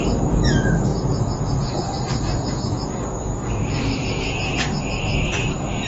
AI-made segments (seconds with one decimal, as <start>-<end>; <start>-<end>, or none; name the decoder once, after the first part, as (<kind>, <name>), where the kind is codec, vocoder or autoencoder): 0.9-1.7 (vocoder, Vocos)